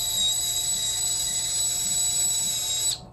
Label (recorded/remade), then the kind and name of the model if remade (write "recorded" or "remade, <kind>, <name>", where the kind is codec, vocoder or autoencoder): recorded